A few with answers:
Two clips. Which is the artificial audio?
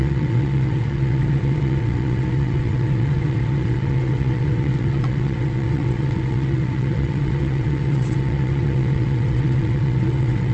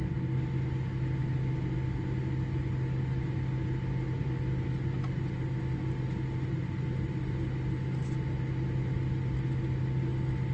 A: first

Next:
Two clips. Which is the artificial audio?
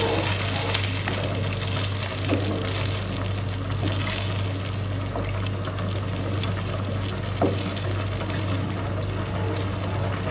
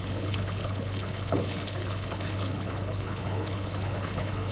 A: second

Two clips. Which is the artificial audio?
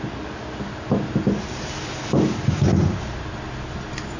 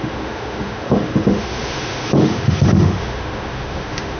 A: second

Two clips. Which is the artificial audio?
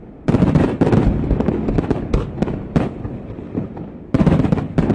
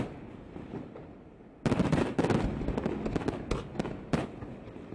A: first